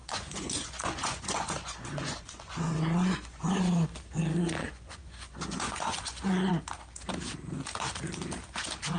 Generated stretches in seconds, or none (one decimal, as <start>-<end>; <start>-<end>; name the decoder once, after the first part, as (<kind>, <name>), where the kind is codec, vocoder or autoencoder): 0.0-3.6 (vocoder, Vocos); 4.6-6.5